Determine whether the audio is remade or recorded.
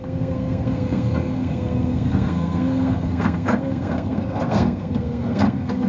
remade